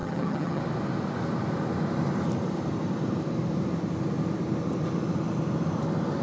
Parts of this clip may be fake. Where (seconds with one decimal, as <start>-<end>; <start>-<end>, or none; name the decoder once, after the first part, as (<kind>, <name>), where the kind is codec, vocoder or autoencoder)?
0.0-0.6 (vocoder, HiFi-GAN)